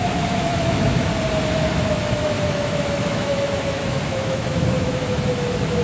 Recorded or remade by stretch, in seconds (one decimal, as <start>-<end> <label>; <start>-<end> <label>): 0.0-1.1 remade; 1.1-1.8 recorded; 1.8-5.8 remade